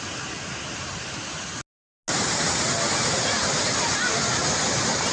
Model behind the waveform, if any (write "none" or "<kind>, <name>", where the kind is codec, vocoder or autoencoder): none